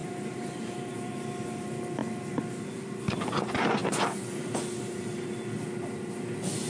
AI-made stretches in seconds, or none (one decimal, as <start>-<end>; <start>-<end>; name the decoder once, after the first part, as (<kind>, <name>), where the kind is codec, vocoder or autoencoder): 0.0-1.1 (vocoder, BigVGAN v2)